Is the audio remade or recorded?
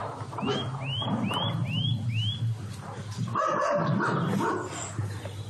recorded